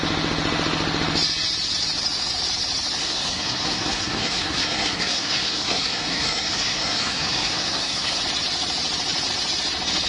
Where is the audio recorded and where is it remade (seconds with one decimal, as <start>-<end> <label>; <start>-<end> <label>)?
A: 0.0-3.0 recorded; 3.0-8.2 remade; 8.2-10.1 recorded